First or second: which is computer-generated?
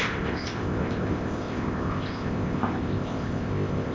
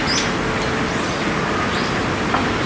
first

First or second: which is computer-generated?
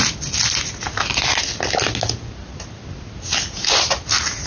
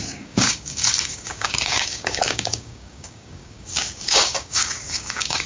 second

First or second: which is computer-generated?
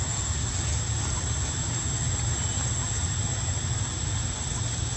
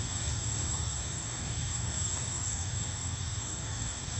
second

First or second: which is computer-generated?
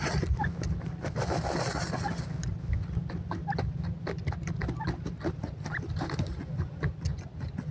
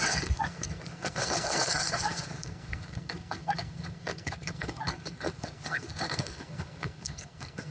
second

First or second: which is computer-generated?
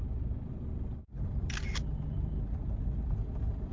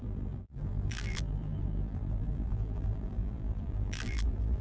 second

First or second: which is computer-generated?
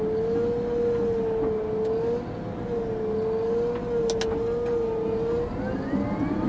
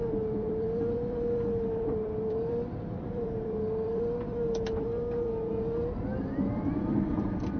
second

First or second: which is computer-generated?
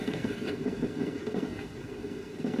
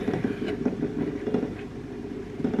first